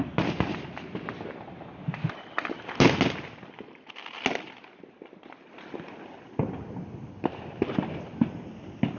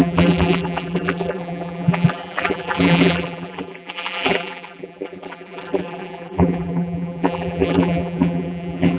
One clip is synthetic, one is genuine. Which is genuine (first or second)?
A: first